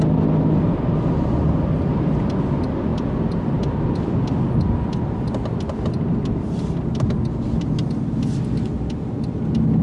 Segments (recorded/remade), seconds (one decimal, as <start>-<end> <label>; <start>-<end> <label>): 0.0-9.8 recorded